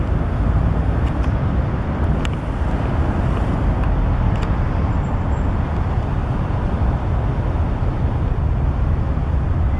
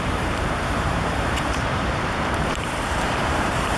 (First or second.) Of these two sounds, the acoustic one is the first